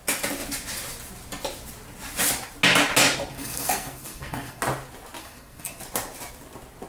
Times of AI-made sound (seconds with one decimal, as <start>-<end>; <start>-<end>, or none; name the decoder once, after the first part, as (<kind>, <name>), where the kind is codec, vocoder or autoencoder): 3.3-4.6 (codec, SNAC); 5.2-5.8

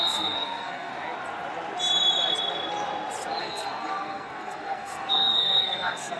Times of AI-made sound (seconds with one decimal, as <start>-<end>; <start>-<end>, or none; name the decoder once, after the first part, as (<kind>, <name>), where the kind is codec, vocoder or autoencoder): 0.0-0.9 (codec, SNAC); 3.4-6.2